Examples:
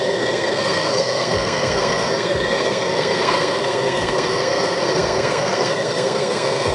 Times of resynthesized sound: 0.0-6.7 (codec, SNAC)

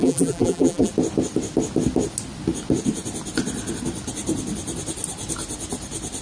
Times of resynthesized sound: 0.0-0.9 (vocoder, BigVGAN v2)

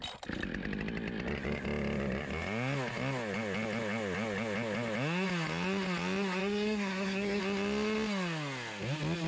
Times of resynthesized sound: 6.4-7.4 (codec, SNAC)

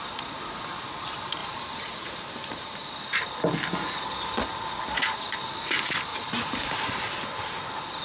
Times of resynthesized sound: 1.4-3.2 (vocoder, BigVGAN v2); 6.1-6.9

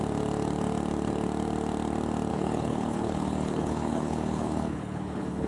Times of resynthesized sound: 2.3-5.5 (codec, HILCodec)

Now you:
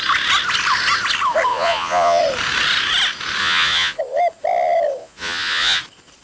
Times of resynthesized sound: 1.5-2.2 (vocoder, Vocos); 3.4-4.0; 5.0-5.8

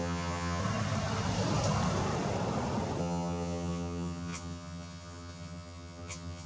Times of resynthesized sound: 0.0-0.6 (vocoder, HiFi-GAN); 3.0-6.5